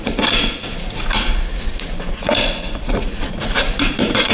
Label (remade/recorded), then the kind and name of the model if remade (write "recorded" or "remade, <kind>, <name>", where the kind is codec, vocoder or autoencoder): remade, vocoder, Vocos